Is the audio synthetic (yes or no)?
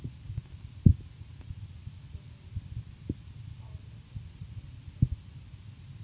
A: no